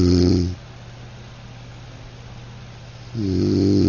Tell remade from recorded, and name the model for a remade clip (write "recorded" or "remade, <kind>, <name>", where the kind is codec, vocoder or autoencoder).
recorded